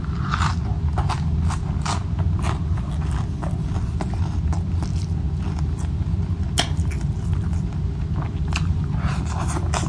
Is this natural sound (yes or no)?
yes